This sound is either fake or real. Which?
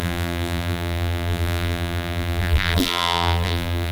fake